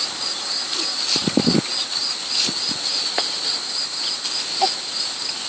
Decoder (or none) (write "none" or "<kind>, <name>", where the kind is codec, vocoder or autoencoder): none